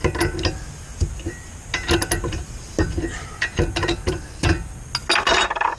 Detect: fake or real real